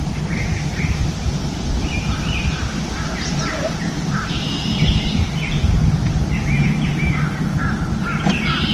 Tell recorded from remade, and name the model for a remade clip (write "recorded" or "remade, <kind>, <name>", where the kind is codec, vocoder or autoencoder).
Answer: remade, vocoder, BigVGAN v2